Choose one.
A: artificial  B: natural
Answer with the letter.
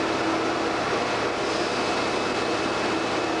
B